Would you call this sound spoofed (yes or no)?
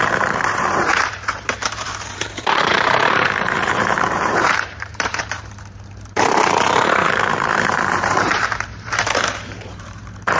yes